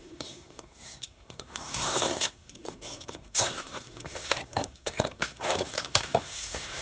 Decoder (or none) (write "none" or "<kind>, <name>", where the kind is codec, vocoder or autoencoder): codec, SNAC